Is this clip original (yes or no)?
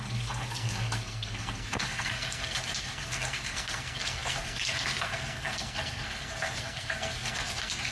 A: no